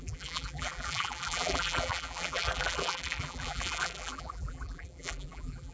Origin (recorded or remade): remade